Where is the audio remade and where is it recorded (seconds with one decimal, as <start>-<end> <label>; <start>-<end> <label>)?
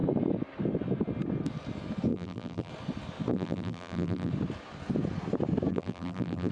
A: 0.0-2.1 recorded; 2.1-2.7 remade; 2.7-3.3 recorded; 3.3-4.3 remade; 4.3-5.7 recorded; 5.7-6.5 remade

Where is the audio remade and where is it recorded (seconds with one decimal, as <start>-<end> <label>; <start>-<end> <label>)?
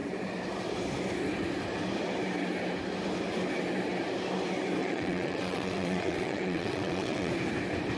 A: 0.0-4.8 recorded; 4.8-7.3 remade; 7.3-8.0 recorded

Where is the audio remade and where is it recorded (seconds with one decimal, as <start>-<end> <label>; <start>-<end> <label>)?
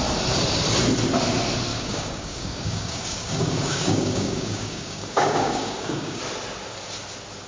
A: 0.0-1.7 recorded; 1.7-6.2 remade; 6.2-7.5 recorded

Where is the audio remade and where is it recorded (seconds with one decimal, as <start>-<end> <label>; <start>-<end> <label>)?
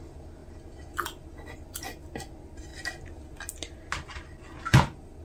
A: 0.0-5.2 recorded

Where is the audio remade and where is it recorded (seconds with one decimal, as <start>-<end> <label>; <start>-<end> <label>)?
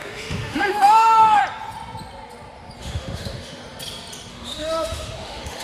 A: 0.0-1.4 remade; 1.4-2.8 recorded; 2.8-3.6 remade; 3.6-4.3 recorded; 4.3-5.6 remade